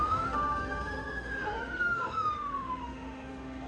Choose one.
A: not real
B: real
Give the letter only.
A